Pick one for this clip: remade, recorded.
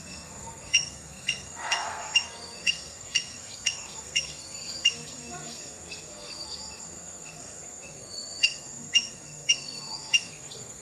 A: remade